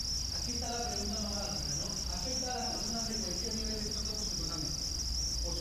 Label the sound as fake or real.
real